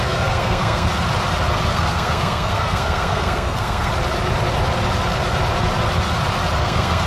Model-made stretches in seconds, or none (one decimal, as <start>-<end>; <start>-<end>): 0.0-0.9; 1.7-3.9; 6.6-7.1